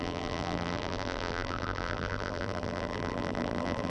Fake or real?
fake